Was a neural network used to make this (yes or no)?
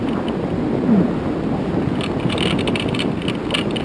no